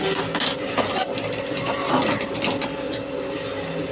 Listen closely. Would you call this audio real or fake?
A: real